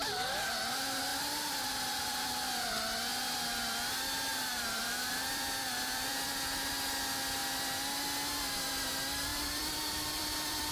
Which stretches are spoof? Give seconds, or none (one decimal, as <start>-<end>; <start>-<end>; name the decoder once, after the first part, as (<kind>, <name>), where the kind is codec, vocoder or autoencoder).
1.1-2.7 (vocoder, BigVGAN v2); 4.3-6.7; 9.3-10.7